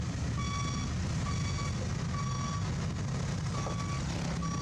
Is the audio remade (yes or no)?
no